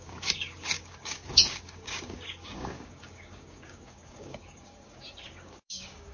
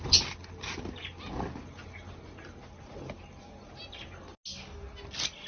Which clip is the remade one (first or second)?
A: first